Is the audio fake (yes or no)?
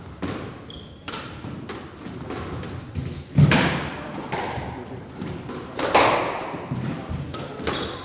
no